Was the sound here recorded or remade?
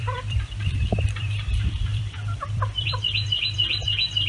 remade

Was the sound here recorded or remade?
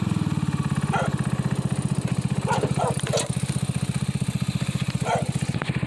recorded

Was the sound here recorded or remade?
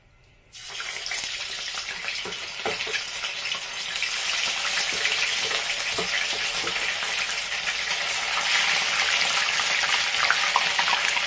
recorded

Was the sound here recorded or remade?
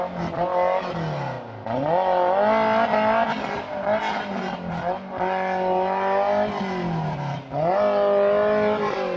recorded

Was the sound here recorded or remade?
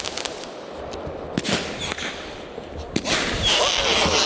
recorded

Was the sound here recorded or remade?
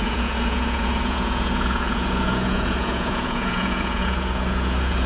remade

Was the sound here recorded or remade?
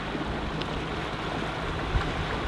recorded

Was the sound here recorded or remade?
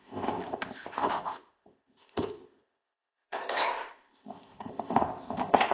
remade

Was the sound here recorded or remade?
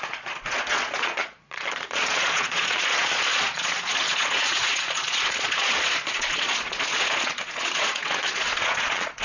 remade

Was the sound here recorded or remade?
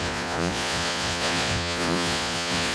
remade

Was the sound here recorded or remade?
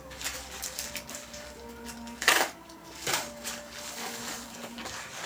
remade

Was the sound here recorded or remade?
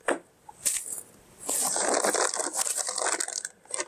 recorded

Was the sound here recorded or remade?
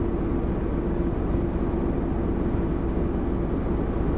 recorded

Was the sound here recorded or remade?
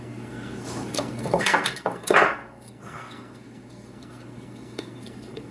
remade